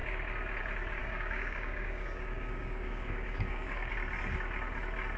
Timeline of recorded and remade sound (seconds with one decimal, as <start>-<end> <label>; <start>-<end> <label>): 0.0-1.0 recorded; 1.0-3.9 remade; 3.9-5.2 recorded